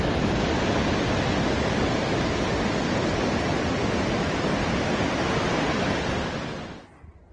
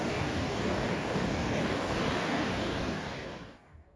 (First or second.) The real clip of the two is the first